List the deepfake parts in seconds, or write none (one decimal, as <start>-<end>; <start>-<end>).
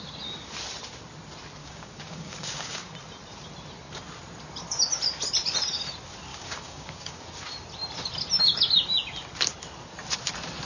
1.6-2.9; 6.3-7.2